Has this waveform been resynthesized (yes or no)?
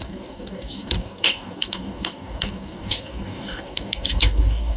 yes